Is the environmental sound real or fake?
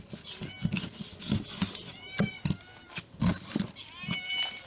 real